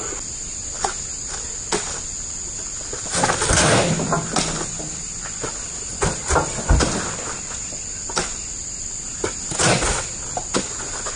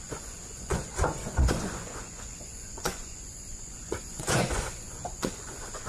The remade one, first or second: second